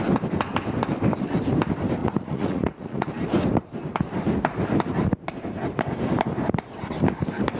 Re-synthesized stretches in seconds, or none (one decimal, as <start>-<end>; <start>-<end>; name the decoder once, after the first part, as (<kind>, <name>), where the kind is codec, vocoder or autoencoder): 2.0-3.1 (vocoder, Vocos)